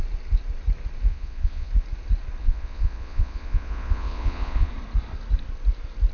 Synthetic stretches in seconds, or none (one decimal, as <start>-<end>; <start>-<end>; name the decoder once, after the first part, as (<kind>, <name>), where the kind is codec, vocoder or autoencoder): 1.1-1.7 (vocoder, Vocos); 2.4-4.7